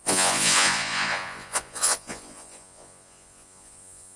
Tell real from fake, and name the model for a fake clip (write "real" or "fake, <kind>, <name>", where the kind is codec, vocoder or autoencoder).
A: fake, vocoder, Vocos